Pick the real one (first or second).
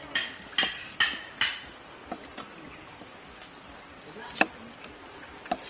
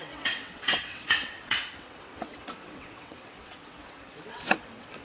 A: first